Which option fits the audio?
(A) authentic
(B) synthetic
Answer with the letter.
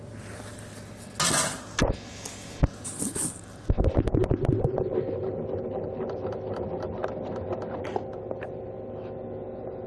A